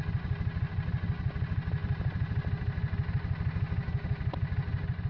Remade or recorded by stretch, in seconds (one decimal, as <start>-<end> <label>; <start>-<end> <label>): 0.0-1.8 recorded; 1.8-2.6 remade; 2.6-5.1 recorded